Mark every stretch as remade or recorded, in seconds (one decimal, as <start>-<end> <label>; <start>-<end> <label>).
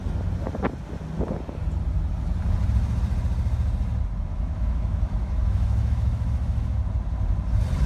0.0-4.3 recorded; 4.3-6.8 remade; 6.8-7.9 recorded